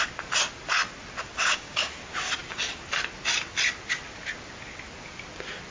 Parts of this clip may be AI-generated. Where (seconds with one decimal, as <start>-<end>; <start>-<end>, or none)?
1.4-1.9